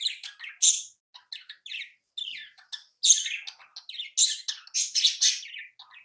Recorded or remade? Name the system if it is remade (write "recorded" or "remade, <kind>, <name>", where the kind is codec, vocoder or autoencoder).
recorded